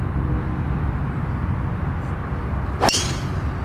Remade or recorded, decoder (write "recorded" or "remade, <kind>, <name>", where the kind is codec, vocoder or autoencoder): recorded